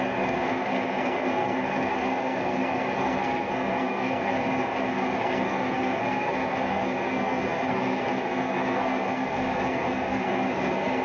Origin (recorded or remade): remade